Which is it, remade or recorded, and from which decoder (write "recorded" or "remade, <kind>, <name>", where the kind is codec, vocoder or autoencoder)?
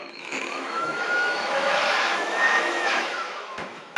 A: remade, autoencoder, DAC-VAE